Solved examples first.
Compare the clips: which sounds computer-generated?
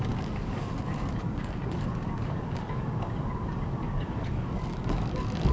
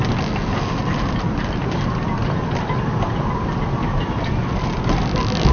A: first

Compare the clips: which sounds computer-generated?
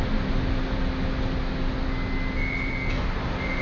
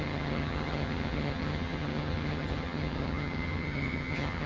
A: second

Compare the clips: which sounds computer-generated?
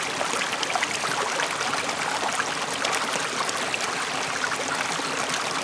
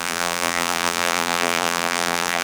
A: second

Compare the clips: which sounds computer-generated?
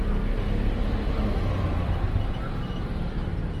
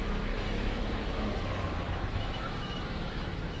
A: second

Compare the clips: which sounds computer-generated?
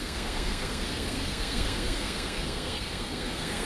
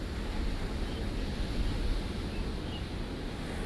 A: first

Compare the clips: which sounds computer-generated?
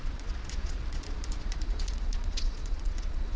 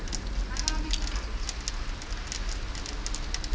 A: first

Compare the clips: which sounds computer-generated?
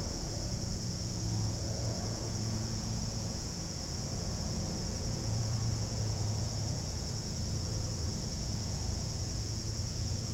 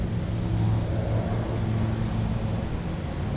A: first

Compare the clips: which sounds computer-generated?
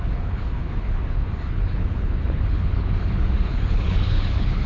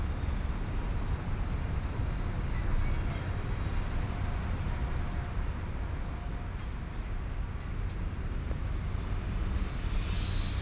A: first